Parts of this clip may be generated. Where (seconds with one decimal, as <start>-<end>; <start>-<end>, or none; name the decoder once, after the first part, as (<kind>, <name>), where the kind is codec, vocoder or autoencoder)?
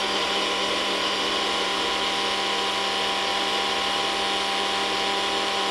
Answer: 0.0-1.9 (vocoder, BigVGAN v2); 3.3-4.0